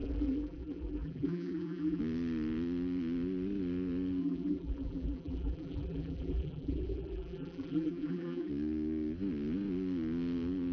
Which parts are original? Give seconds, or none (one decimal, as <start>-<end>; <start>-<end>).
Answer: 2.0-4.2; 8.5-10.7